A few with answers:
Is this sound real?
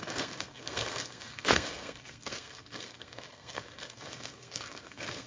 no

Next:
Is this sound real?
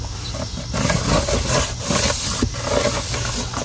yes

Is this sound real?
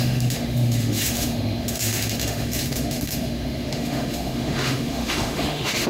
no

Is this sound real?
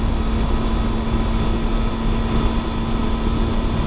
yes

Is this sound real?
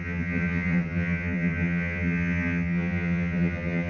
no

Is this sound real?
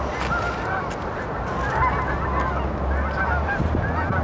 yes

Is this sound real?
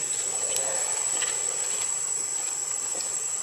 yes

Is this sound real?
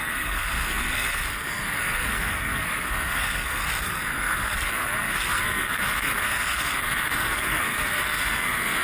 no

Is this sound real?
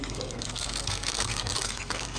no